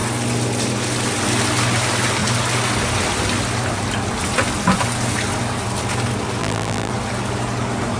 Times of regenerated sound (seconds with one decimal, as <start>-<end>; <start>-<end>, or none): 6.4-6.9